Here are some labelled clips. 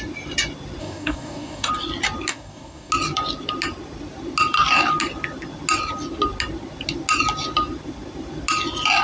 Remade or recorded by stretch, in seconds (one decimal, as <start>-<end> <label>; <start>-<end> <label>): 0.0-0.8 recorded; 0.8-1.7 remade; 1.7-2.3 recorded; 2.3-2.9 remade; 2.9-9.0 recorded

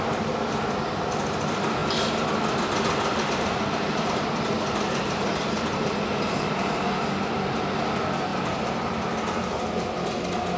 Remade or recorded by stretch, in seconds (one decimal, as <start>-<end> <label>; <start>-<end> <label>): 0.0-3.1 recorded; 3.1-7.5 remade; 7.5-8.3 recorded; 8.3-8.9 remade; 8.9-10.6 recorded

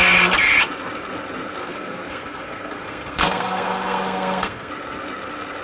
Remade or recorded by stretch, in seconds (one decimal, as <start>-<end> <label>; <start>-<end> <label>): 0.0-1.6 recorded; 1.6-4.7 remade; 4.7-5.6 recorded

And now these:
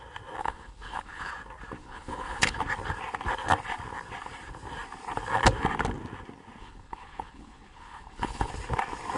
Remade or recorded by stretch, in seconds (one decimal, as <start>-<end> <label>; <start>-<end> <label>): 0.0-0.4 recorded; 0.4-1.3 remade; 1.3-1.8 recorded; 1.8-2.6 remade; 2.6-6.6 recorded; 6.6-8.5 remade; 8.5-9.2 recorded

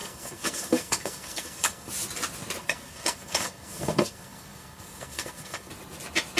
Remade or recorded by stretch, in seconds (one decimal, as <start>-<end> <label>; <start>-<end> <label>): 0.0-1.9 remade; 1.9-2.6 recorded; 2.6-5.7 remade; 5.7-6.4 recorded

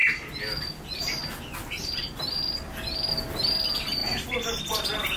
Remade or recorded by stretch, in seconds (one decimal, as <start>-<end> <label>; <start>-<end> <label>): 0.0-5.2 recorded